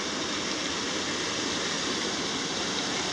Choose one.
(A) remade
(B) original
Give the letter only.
B